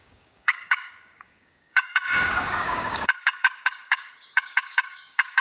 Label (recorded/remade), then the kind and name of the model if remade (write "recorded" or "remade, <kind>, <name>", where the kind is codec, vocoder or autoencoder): remade, codec, DAC